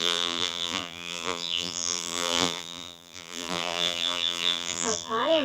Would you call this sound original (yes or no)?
no